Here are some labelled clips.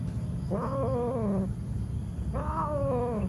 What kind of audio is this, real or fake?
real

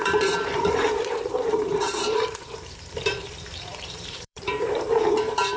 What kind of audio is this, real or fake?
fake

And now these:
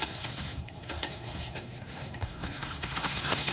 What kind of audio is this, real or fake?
fake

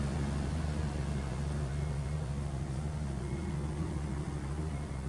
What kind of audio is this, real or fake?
fake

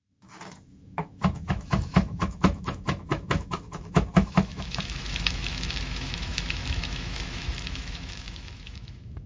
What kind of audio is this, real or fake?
fake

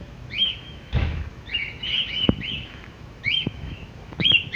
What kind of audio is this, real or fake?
fake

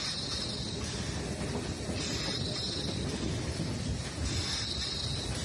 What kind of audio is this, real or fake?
real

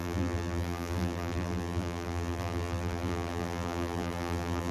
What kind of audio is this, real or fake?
fake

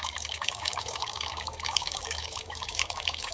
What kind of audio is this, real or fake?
fake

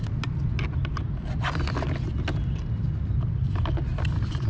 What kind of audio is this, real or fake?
real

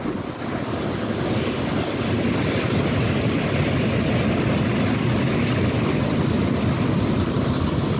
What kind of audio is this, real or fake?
real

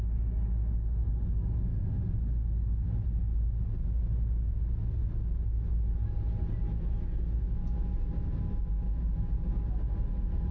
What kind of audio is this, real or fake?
real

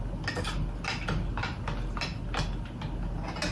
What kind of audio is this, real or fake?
real